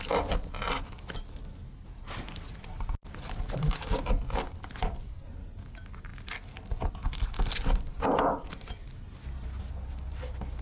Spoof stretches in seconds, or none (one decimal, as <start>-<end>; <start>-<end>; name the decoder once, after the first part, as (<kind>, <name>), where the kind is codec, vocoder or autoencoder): none